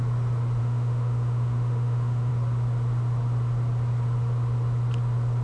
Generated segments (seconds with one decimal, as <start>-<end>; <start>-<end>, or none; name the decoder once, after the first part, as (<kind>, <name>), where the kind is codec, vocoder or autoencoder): 0.6-2.3 (autoencoder, DAC-VAE)